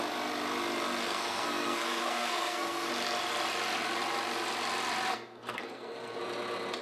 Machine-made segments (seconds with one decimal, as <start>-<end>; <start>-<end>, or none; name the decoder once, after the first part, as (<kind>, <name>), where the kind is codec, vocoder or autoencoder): 1.0-2.9 (codec, SNAC); 5.1-6.2